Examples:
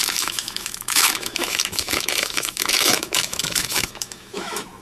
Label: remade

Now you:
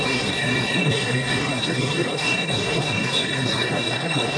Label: remade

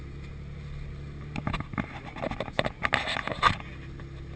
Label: recorded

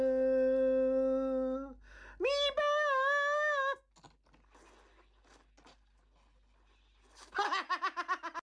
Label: recorded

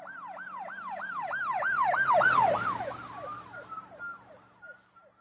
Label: remade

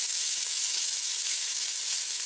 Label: remade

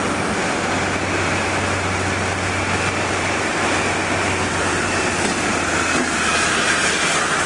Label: recorded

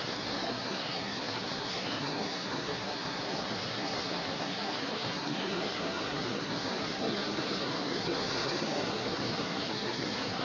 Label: remade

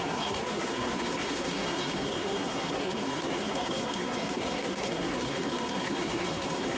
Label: remade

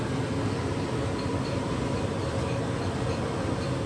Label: recorded